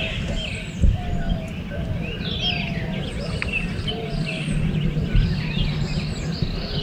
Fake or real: real